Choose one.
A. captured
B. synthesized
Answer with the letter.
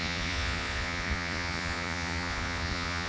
B